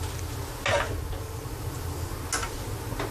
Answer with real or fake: real